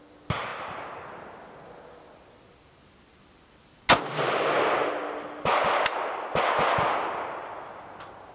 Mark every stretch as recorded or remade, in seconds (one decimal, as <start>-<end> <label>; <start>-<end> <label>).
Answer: 0.0-8.3 recorded